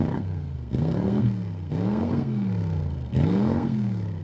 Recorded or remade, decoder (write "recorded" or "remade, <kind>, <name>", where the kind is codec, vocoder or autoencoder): remade, codec, SNAC